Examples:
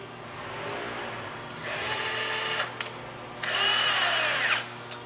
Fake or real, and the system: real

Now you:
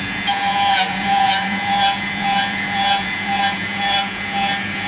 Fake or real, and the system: fake, vocoder, Vocos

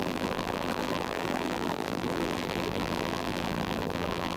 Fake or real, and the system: fake, vocoder, BigVGAN v2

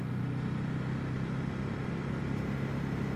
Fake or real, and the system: real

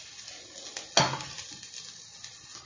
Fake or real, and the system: real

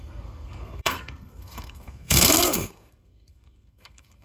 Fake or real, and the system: fake, codec, SNAC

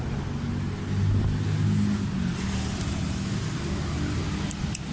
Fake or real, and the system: real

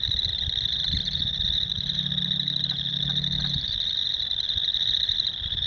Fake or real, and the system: real